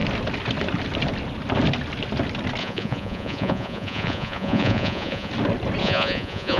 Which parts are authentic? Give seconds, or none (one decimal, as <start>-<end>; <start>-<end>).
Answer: 0.0-2.6; 5.3-5.8